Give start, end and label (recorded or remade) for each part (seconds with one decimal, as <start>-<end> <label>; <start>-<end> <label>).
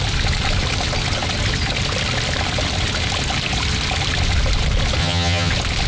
0.0-5.0 recorded; 5.0-5.5 remade; 5.5-5.9 recorded